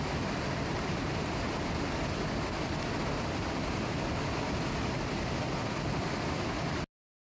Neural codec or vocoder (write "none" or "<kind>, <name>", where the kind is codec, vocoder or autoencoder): none